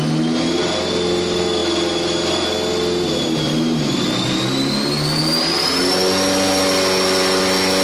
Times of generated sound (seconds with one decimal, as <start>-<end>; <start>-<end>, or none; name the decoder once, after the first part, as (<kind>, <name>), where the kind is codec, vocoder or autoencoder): none